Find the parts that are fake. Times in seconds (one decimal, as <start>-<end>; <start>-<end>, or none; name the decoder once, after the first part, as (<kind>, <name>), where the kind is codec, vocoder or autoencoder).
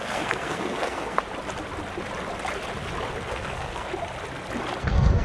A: 0.0-1.2 (codec, SNAC); 3.2-3.9; 4.8-5.2